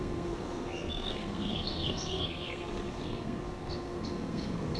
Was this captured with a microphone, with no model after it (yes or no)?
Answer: no